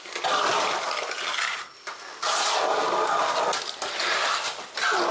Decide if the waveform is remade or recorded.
recorded